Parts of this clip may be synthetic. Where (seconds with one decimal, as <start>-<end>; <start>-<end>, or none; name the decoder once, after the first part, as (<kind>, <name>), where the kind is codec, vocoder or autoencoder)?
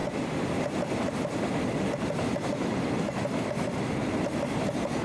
none